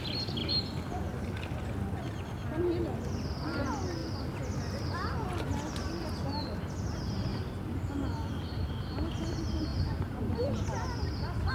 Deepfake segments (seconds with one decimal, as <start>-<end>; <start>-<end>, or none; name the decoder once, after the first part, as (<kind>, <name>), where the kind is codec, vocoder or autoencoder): 7.3-8.6 (vocoder, BigVGAN v2); 9.7-11.5